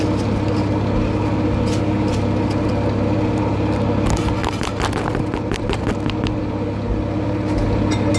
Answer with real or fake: real